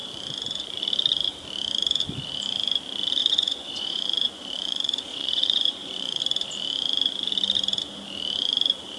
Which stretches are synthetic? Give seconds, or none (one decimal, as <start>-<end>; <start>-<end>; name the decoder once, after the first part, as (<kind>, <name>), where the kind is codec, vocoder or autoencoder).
3.2-6.2 (vocoder, Vocos)